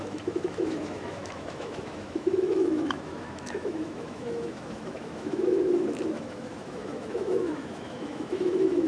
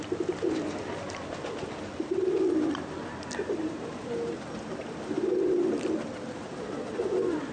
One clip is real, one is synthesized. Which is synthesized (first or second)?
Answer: first